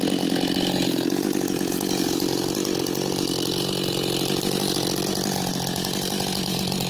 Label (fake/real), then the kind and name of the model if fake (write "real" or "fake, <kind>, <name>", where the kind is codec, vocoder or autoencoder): real